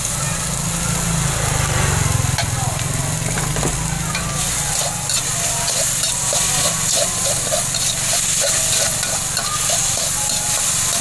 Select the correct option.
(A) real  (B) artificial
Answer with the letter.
A